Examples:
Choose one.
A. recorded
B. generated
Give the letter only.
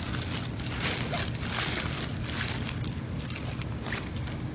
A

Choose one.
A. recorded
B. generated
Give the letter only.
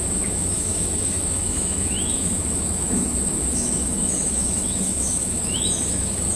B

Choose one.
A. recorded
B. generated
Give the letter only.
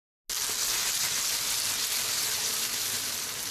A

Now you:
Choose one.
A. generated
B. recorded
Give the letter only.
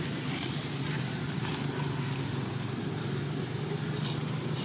B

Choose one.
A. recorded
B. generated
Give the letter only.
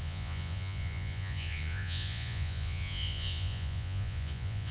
B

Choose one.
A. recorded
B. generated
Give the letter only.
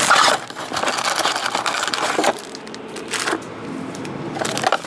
A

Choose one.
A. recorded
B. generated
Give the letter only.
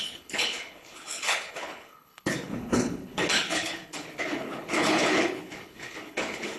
B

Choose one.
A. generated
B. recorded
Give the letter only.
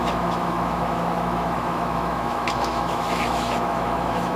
A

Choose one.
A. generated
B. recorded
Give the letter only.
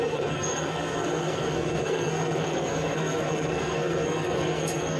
A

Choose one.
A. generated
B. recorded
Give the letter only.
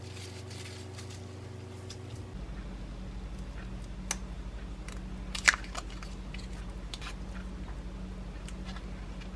B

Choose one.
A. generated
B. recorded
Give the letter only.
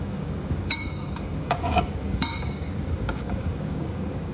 A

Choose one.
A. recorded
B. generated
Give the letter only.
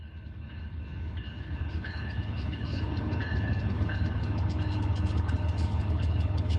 B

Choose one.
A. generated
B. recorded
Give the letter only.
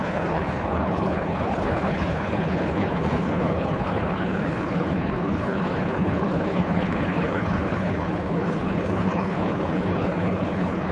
A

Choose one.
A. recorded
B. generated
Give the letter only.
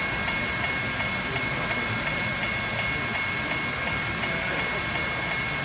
A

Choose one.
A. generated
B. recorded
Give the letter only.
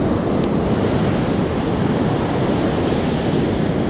B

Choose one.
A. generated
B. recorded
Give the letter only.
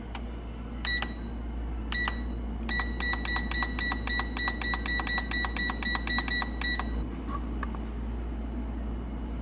B